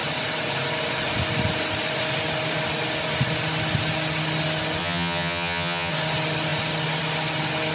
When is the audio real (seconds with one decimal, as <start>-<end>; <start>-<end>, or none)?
0.0-4.8; 5.9-7.7